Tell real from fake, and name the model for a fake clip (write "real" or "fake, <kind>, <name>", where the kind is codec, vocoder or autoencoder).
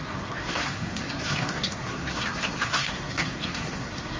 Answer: fake, codec, SNAC